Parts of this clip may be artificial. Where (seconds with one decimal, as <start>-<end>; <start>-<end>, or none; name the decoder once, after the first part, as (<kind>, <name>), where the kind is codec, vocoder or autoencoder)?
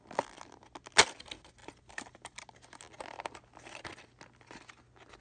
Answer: none